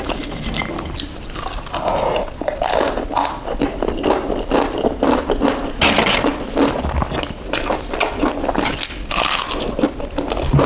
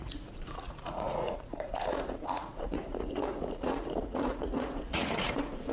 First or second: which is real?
first